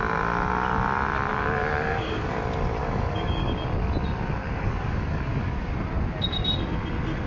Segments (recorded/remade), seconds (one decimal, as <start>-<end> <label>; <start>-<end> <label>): 0.0-1.3 recorded; 1.3-2.3 remade; 2.3-2.8 recorded; 2.8-3.5 remade; 3.5-4.4 recorded; 4.4-5.7 remade; 5.7-7.3 recorded